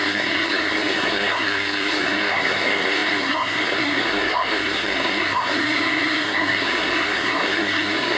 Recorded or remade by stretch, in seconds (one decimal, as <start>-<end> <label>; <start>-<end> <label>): 0.0-8.2 remade